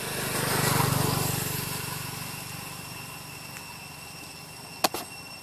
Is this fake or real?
real